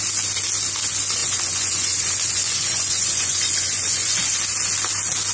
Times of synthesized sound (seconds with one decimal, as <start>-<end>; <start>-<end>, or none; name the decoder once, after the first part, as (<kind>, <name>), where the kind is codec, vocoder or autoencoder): 1.2-4.4 (vocoder, Vocos)